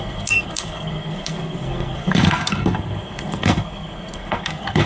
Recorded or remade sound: remade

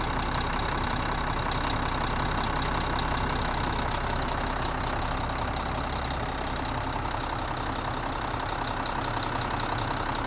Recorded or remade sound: recorded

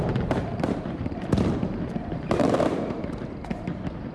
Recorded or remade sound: remade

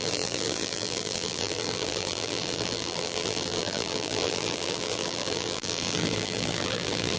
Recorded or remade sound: remade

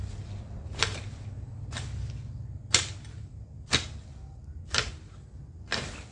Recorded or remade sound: recorded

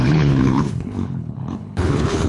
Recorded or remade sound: remade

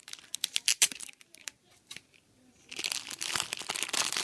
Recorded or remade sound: remade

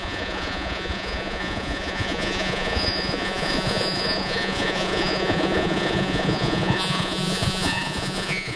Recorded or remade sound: remade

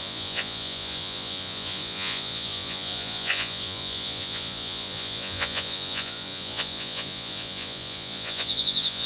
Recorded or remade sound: remade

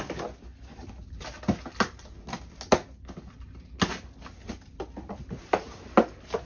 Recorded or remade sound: recorded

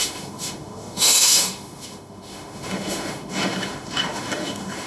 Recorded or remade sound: remade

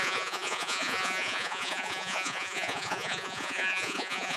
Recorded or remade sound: remade